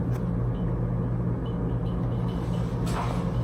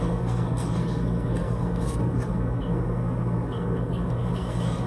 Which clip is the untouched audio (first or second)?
first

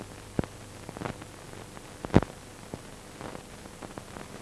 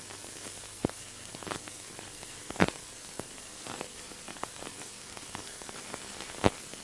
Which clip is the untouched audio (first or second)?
first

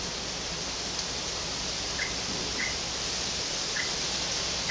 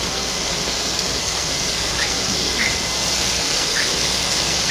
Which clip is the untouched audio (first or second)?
first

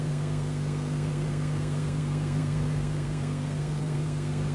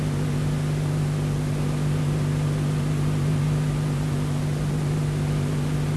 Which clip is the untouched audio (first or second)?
second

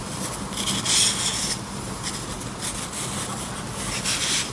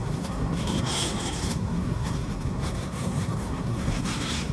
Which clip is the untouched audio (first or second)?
first